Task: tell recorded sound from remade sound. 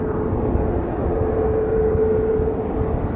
recorded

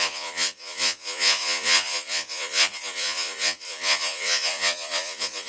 remade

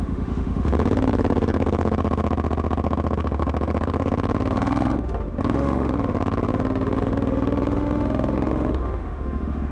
remade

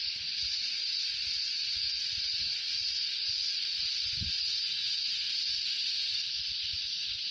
recorded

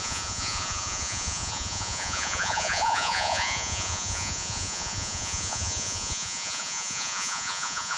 remade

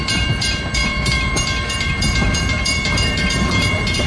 remade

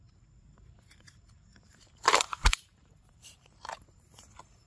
remade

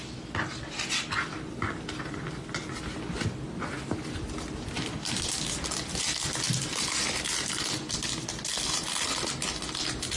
recorded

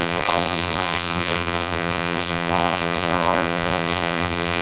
remade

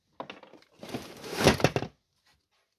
recorded